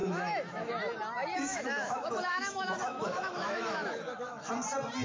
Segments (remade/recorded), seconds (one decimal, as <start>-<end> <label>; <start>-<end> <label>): 0.0-0.7 remade; 0.7-1.5 recorded; 1.5-4.5 remade; 4.5-5.0 recorded